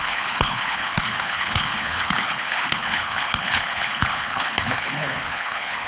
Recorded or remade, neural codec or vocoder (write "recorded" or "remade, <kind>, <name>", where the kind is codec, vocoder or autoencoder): remade, codec, HILCodec